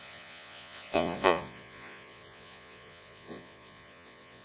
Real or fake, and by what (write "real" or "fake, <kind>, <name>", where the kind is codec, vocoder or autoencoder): fake, vocoder, Vocos